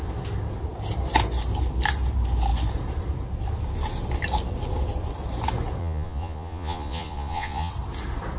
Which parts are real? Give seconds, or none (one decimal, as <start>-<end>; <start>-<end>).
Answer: 0.0-5.8; 7.7-8.4